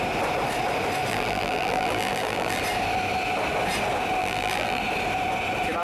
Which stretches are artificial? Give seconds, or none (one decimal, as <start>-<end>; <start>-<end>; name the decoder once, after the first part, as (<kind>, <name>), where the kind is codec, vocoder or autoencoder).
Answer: 1.1-2.6 (vocoder, BigVGAN v2); 4.2-4.8